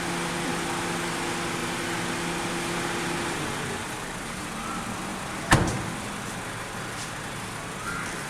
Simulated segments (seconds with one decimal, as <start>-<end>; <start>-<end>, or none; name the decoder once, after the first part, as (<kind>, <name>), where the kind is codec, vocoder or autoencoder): none